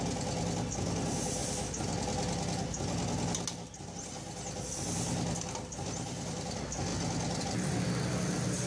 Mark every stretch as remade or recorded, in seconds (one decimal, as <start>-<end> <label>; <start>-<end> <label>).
0.0-8.7 recorded